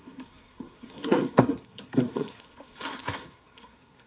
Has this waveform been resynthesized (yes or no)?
yes